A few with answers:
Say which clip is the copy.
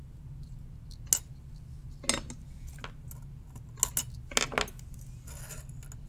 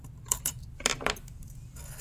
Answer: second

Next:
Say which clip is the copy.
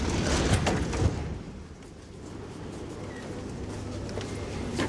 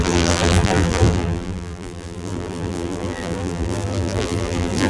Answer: second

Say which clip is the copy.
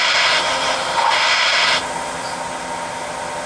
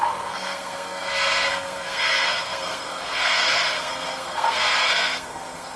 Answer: second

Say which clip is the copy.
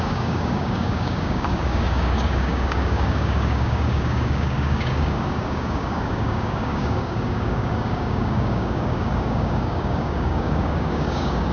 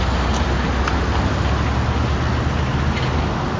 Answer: first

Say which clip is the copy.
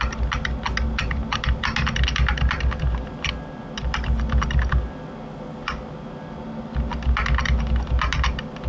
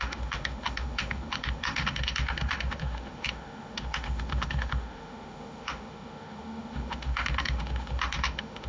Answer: second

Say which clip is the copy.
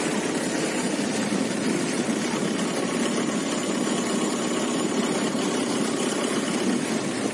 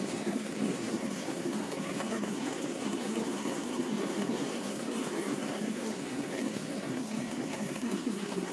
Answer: second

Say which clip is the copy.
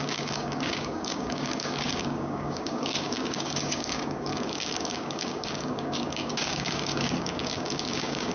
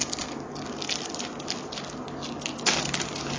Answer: first